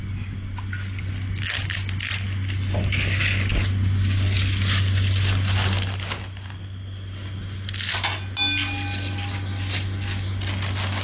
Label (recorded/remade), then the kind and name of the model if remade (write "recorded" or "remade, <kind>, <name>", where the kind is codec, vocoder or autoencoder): recorded